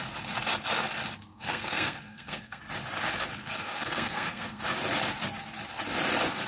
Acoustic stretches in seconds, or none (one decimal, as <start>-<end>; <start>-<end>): 0.0-1.3; 2.6-3.4; 4.6-6.5